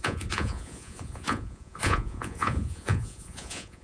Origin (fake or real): fake